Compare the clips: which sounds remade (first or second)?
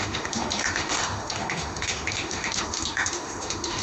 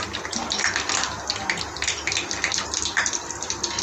first